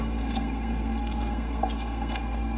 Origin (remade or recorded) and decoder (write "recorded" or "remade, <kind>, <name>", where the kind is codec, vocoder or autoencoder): remade, codec, SNAC